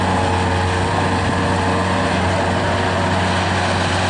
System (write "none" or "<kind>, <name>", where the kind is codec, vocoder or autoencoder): none